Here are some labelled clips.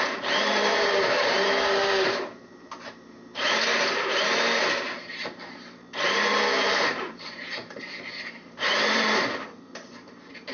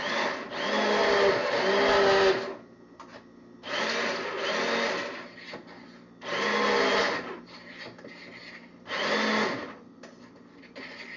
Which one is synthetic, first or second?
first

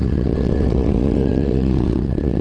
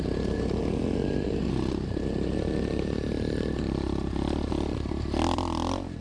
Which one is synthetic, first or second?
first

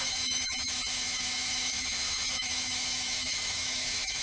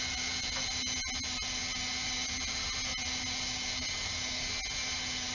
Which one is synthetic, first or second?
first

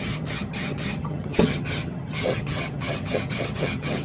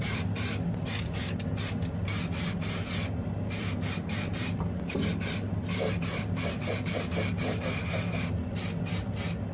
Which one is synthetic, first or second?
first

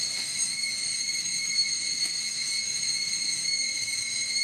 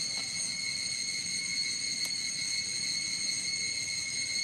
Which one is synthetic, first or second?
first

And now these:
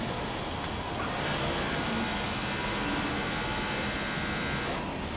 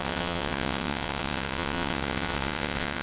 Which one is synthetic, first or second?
second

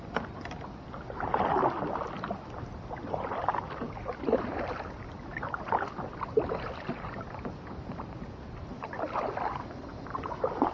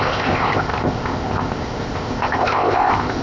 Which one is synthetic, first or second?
second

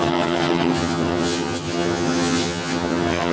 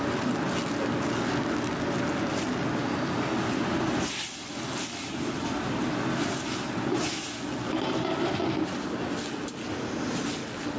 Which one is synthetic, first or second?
first